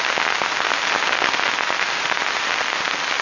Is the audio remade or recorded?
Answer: recorded